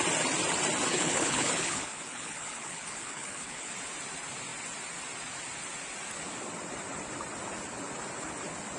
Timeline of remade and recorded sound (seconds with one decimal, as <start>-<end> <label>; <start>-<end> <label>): 0.0-0.9 recorded; 0.9-3.7 remade; 3.7-8.8 recorded